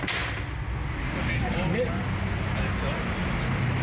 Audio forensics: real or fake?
real